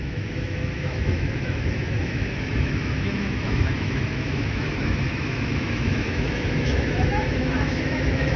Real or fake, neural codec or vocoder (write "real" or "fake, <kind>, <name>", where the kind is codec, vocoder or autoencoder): fake, autoencoder, DAC-VAE